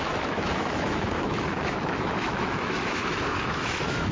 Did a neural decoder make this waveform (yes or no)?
yes